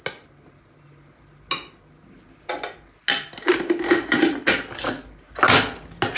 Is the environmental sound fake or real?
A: real